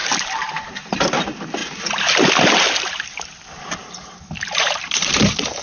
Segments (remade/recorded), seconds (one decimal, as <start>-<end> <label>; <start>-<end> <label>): 0.0-1.1 remade; 1.1-1.6 recorded; 1.6-2.3 remade; 2.3-3.8 recorded; 3.8-5.6 remade